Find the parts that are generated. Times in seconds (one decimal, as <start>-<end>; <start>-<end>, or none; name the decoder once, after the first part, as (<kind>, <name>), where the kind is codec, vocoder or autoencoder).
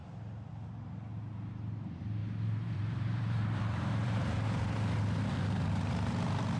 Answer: 2.2-4.2 (vocoder, BigVGAN v2)